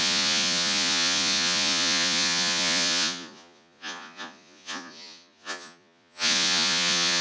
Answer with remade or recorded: remade